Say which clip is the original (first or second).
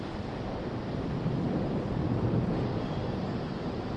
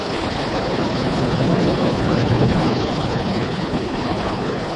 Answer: first